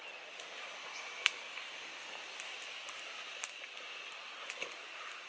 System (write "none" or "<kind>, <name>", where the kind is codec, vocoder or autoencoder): none